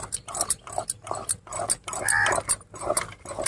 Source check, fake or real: real